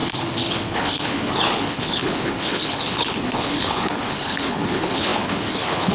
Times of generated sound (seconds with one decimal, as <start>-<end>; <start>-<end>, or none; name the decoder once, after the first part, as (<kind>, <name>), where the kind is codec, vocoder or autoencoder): 0.0-5.9 (codec, HILCodec)